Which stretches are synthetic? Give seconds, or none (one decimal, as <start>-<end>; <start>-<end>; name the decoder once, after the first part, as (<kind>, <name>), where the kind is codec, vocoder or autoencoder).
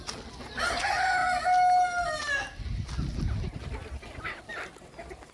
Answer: none